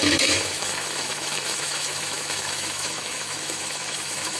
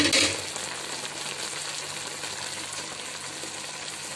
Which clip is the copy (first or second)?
first